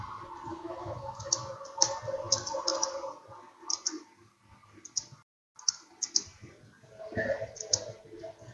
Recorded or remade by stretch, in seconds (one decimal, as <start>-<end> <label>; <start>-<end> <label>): 0.0-0.5 recorded; 0.5-1.3 remade; 1.3-8.5 recorded